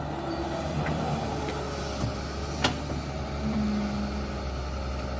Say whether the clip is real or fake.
real